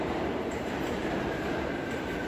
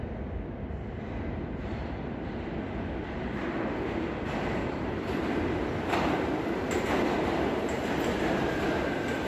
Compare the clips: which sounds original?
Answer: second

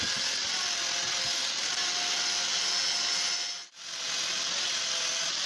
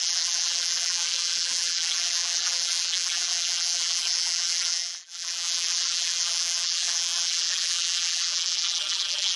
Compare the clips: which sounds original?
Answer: first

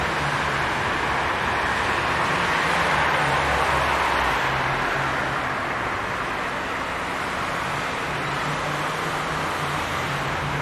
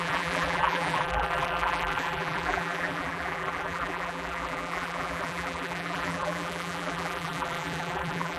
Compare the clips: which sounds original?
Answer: first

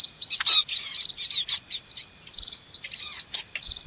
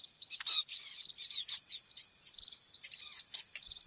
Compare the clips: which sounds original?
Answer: first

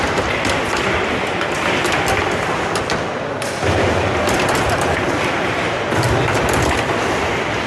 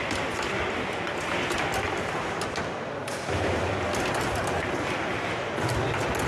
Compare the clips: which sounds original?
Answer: second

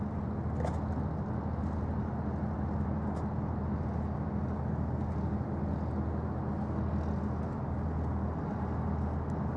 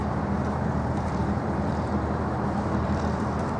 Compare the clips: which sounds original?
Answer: first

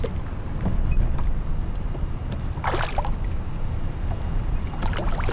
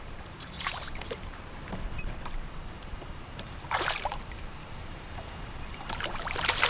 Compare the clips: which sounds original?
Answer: first